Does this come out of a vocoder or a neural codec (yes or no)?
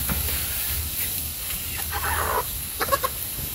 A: yes